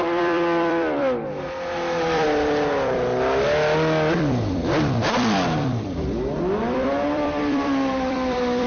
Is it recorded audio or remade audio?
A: remade